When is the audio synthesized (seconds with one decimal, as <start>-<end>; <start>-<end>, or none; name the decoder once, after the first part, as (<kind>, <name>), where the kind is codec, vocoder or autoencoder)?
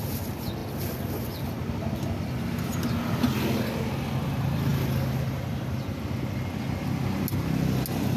none